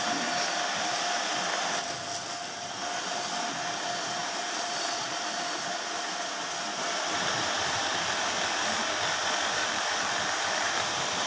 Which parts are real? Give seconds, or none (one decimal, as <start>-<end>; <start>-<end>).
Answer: 0.0-4.2; 5.0-6.7; 8.3-9.6